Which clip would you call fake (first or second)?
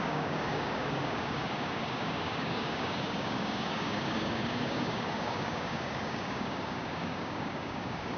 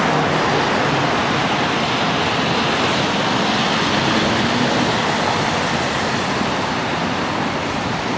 first